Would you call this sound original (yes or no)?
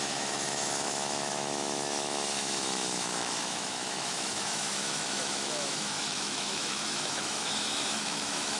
no